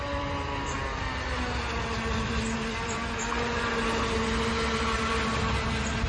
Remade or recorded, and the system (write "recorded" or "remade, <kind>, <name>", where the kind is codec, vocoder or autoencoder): recorded